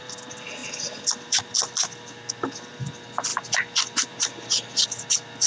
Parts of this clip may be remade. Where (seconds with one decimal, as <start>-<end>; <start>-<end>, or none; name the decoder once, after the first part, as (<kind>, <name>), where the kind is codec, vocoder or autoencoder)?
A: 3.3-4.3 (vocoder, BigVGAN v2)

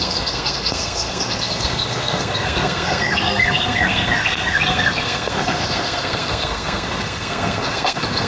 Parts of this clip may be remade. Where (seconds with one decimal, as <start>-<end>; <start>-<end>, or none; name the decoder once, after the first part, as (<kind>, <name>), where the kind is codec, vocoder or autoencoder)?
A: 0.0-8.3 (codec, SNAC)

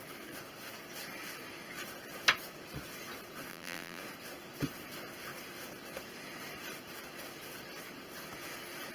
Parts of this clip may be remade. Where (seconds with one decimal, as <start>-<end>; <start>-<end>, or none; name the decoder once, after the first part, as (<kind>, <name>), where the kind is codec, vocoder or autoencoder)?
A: 3.5-4.0 (vocoder, BigVGAN v2)

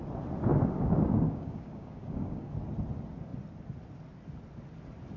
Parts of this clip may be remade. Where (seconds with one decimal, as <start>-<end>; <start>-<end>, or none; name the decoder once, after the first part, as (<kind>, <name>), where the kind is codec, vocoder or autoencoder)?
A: 0.5-2.5 (codec, DAC)